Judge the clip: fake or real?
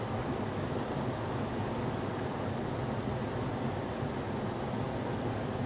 real